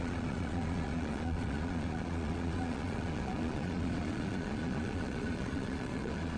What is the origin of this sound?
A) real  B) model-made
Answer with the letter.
B